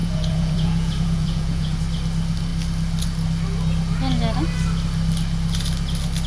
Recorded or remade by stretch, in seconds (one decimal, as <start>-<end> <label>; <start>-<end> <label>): 0.0-1.8 remade; 1.8-6.3 recorded